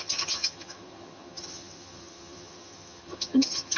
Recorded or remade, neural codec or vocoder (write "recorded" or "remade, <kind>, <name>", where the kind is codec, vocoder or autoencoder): remade, vocoder, HiFi-GAN